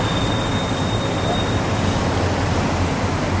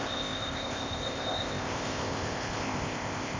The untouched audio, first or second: first